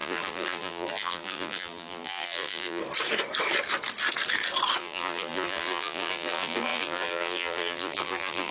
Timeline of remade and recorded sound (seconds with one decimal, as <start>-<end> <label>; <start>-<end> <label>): 0.0-2.8 remade; 2.8-4.8 recorded; 4.8-8.5 remade